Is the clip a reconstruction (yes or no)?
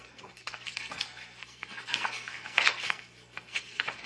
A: yes